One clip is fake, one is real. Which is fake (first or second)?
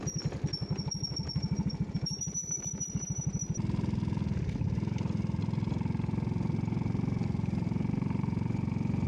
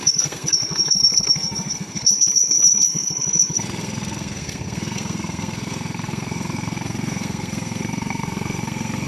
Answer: second